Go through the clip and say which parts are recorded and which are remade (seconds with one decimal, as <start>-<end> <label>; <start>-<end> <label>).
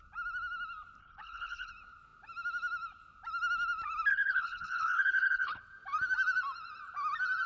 0.0-1.0 recorded; 1.0-1.7 remade; 1.7-4.1 recorded; 4.1-5.6 remade; 5.6-7.5 recorded